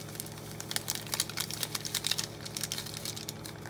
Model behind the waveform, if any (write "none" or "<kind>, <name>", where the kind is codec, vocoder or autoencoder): none